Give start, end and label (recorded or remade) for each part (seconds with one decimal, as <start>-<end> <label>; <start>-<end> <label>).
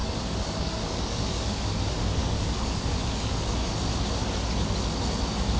0.0-1.8 remade; 1.8-2.2 recorded; 2.2-3.7 remade; 3.7-5.6 recorded